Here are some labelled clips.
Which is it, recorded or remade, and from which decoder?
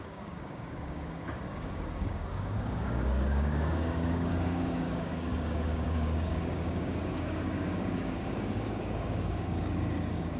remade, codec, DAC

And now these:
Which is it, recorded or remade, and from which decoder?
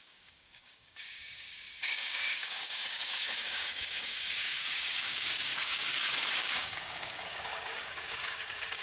remade, codec, DAC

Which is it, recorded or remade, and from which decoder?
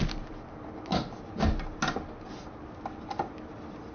recorded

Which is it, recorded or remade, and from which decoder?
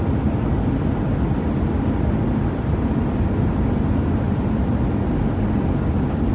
recorded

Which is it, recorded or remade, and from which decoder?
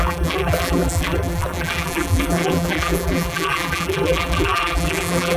remade, vocoder, BigVGAN v2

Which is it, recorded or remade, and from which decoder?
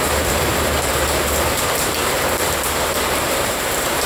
remade, vocoder, BigVGAN v2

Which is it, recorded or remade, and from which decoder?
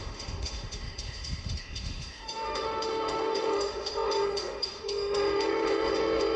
remade, autoencoder, DAC-VAE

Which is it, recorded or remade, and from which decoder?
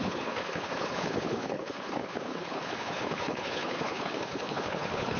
remade, codec, HILCodec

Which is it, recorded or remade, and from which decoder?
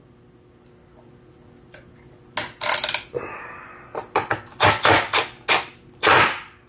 recorded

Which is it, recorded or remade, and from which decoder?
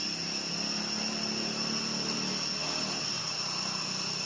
recorded